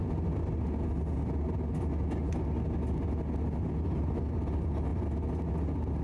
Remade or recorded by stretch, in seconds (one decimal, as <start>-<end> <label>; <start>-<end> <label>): 0.0-6.0 recorded